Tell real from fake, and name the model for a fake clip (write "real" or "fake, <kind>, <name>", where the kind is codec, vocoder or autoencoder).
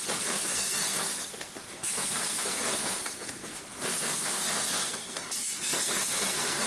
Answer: fake, codec, SNAC